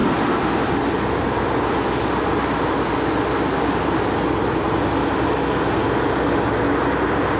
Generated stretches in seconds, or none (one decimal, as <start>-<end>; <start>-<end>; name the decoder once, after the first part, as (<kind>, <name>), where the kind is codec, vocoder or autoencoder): none

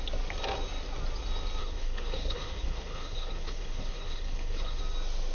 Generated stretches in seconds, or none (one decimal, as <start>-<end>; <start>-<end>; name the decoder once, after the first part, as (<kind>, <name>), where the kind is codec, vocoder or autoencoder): 1.6-4.8 (codec, HILCodec)

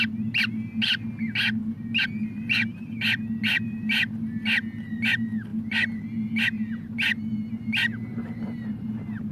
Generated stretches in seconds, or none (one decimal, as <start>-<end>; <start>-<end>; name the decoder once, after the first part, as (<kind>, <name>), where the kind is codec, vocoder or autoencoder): 8.1-8.9 (vocoder, BigVGAN v2)

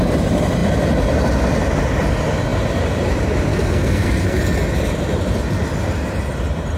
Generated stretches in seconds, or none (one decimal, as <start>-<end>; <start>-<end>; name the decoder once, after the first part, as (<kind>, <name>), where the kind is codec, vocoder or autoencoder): 3.5-4.4 (codec, SNAC)

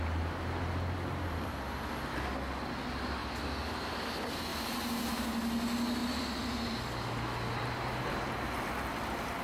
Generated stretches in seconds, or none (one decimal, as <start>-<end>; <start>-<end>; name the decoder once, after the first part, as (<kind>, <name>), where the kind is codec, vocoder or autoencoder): 3.2-3.9 (vocoder, BigVGAN v2); 4.5-5.2; 6.0-6.8

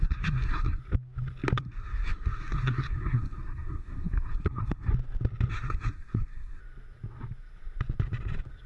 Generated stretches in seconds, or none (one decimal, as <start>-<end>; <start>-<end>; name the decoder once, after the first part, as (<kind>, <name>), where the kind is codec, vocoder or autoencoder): 0.0-0.8 (codec, SNAC); 1.6-4.9; 5.5-6.6